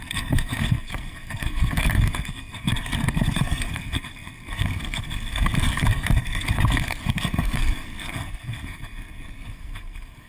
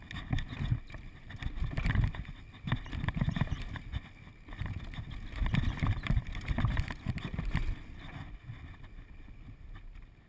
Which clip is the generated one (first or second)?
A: first